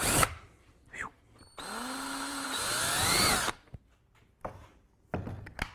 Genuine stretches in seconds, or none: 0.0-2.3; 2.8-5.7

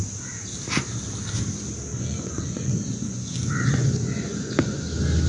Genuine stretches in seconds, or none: 0.0-1.9; 4.8-5.3

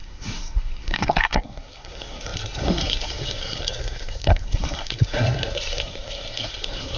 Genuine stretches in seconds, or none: none

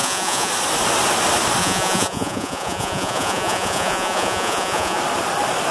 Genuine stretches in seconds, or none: 0.5-1.6; 5.0-5.7

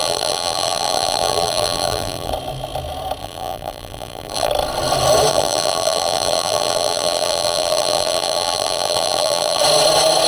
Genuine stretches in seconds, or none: 2.3-3.2; 4.5-5.3; 9.6-10.3

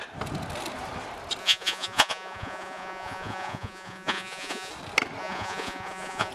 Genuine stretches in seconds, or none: 0.0-1.4; 4.7-5.2